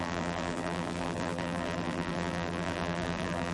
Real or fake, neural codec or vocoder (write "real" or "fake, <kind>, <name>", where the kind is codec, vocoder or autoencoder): fake, vocoder, BigVGAN v2